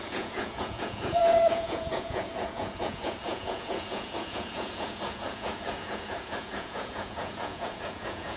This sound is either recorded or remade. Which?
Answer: remade